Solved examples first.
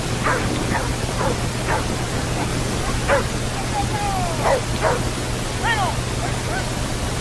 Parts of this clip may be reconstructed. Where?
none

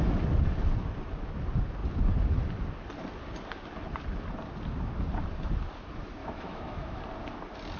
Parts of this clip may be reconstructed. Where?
6.2-7.0 (autoencoder, DAC-VAE)